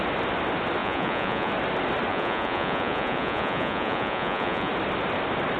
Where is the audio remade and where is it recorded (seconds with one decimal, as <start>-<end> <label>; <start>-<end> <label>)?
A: 0.0-0.8 recorded; 0.8-1.5 remade; 1.5-2.1 recorded; 2.1-4.7 remade; 4.7-5.6 recorded